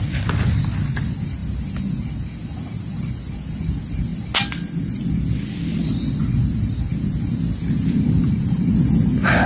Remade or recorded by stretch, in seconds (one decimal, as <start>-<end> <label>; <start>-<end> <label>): 0.0-9.5 recorded